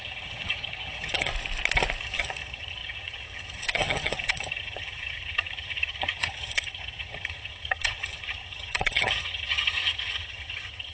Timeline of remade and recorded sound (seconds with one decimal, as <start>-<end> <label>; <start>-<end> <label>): 0.0-1.3 remade; 1.3-2.0 recorded; 2.0-10.9 remade